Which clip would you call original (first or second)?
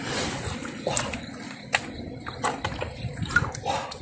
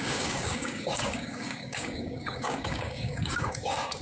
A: first